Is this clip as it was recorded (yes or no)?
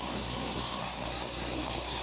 no